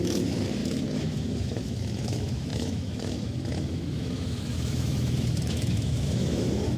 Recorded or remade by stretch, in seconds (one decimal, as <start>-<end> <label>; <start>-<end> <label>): 0.0-6.8 remade